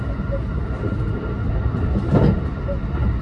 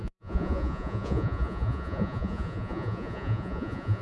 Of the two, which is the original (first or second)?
first